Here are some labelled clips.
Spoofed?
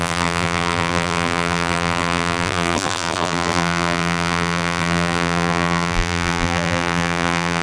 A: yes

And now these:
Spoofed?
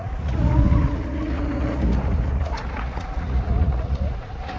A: yes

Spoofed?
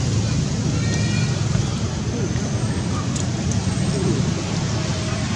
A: no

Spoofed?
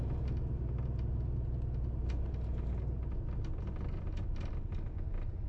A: no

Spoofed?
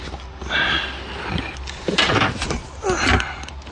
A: no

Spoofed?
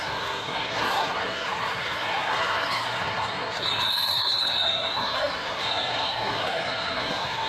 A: yes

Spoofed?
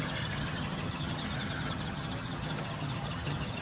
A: yes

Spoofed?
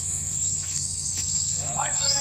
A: yes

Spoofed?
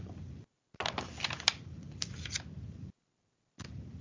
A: no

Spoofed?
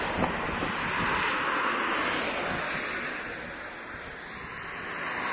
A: no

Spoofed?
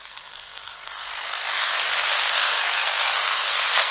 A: yes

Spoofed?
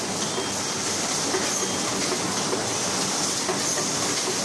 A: no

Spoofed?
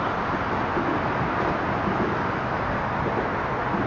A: no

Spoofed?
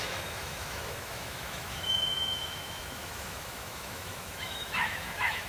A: yes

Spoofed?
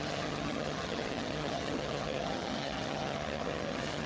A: yes